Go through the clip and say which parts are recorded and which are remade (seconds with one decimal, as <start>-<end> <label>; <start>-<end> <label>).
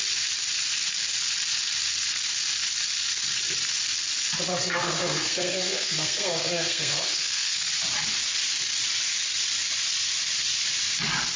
0.0-4.5 recorded; 4.5-7.7 remade; 7.7-11.4 recorded